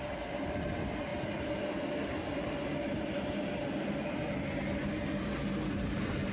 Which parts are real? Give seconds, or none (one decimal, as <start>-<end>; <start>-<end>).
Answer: 0.0-6.3